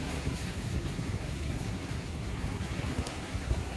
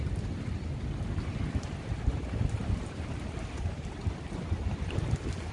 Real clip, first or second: second